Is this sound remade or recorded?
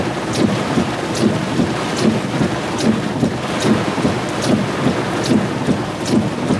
recorded